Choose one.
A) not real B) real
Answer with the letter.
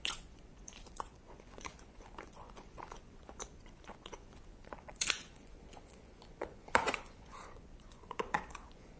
A